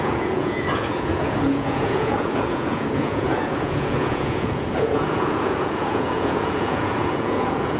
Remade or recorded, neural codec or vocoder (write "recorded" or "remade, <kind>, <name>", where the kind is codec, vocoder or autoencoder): remade, vocoder, Vocos